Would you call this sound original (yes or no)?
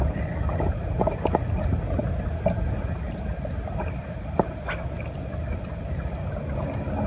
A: yes